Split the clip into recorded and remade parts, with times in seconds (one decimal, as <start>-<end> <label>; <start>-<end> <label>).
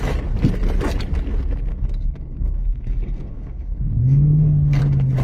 0.0-1.7 recorded; 1.7-4.8 remade; 4.8-5.2 recorded